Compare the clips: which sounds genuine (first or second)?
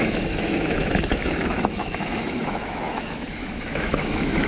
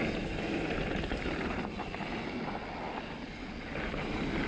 second